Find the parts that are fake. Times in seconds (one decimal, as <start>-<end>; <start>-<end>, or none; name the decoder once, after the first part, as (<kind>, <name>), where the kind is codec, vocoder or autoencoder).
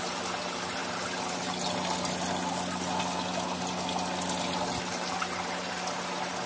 none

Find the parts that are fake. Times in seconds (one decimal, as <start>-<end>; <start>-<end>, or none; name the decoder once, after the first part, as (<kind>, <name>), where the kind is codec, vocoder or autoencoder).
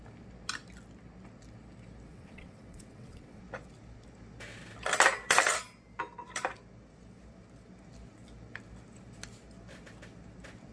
2.1-3.4 (vocoder, WaveNeXt)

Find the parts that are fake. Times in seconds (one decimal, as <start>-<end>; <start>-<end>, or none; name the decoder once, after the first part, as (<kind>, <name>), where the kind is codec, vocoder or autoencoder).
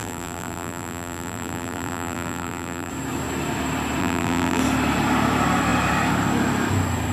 0.0-2.9 (vocoder, BigVGAN v2); 4.0-4.6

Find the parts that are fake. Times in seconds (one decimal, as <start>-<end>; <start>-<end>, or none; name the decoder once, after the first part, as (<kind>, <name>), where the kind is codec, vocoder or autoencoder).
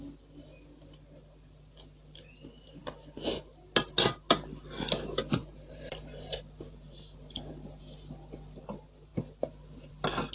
5.4-7.8 (vocoder, BigVGAN v2); 9.1-9.9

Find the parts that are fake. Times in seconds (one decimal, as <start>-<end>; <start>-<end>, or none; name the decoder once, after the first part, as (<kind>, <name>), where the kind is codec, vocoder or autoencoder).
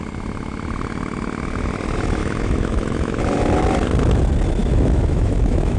2.2-3.2 (autoencoder, DAC-VAE); 4.6-5.8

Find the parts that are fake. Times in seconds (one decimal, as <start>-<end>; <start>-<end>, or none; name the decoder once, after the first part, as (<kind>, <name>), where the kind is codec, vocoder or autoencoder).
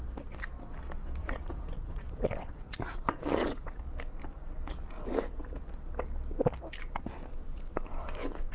1.2-3.8 (vocoder, Vocos)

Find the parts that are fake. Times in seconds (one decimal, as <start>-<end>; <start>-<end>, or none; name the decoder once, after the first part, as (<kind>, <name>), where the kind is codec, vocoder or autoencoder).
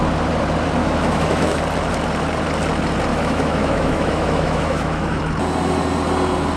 0.8-1.6 (autoencoder, DAC-VAE); 3.1-5.2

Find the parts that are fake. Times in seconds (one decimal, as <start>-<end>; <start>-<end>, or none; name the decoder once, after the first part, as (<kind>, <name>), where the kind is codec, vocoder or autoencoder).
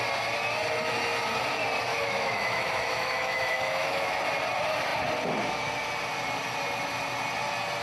1.9-4.2 (autoencoder, DAC-VAE)